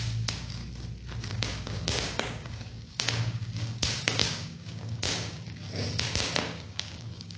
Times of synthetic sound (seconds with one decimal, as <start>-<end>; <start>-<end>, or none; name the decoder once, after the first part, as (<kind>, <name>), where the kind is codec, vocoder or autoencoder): 0.0-0.6 (codec, DAC); 1.2-7.4